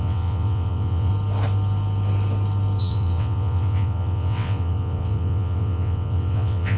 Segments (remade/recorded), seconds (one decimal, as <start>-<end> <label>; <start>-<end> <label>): 0.0-1.1 remade; 1.1-2.8 recorded; 2.8-6.8 remade